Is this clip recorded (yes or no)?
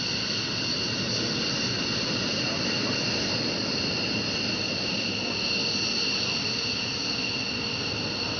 yes